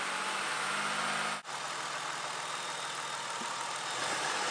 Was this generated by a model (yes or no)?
no